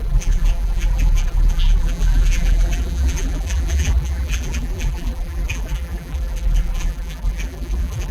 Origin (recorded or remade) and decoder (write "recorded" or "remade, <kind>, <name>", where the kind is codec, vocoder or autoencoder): remade, vocoder, BigVGAN v2